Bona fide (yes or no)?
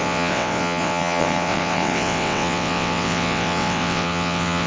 no